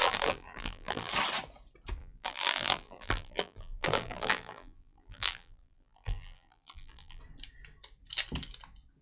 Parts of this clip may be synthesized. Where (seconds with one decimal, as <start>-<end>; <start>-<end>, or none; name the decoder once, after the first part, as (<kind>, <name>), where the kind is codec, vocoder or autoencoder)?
0.0-1.1 (vocoder, BigVGAN v2); 2.0-7.2